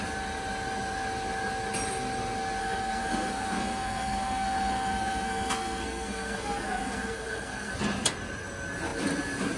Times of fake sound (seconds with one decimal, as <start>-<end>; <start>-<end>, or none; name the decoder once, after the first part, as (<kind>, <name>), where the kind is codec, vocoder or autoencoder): 2.6-7.7 (codec, SNAC)